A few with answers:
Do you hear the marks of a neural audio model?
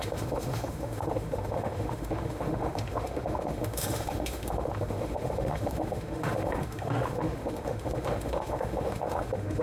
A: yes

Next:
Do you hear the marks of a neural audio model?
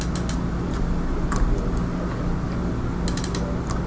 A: no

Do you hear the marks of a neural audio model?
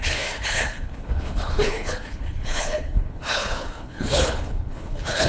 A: yes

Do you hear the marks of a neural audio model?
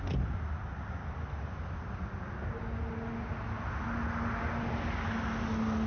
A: no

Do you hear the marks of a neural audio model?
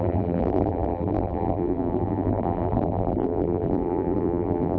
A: yes